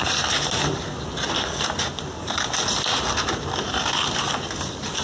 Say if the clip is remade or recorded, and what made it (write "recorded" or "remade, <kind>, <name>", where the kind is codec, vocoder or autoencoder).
recorded